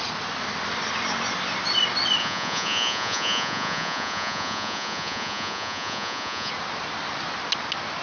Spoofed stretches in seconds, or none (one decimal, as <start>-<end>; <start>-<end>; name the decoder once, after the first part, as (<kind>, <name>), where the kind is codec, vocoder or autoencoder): 2.2-6.5 (vocoder, Vocos)